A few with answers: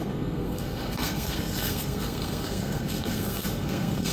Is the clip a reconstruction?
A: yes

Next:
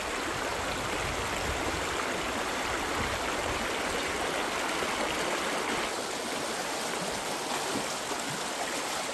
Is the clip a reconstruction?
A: no